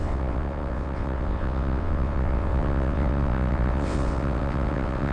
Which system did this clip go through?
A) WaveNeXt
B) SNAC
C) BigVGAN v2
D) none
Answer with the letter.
A